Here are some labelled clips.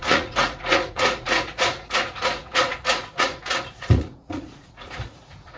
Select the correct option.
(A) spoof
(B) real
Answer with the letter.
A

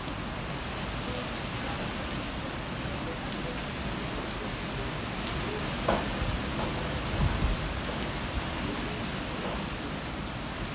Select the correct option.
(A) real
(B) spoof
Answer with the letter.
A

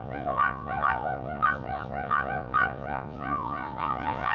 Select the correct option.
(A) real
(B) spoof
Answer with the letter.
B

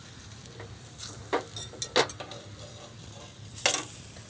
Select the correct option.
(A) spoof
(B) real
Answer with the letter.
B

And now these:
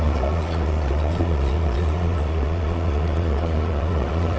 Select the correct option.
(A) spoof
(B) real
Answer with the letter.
A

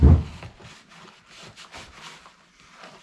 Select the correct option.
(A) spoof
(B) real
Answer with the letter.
B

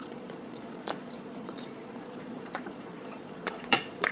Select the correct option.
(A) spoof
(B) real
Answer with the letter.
A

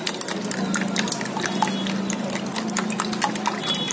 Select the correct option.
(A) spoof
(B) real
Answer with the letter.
B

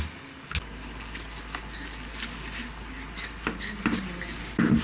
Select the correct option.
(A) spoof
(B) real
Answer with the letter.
B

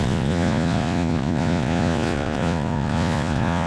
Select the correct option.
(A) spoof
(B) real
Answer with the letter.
A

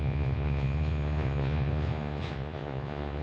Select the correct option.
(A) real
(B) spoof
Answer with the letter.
B